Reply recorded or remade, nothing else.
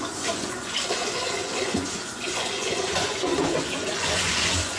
remade